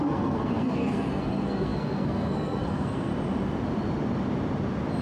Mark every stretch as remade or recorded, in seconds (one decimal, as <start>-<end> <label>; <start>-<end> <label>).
0.0-3.1 remade; 3.1-5.0 recorded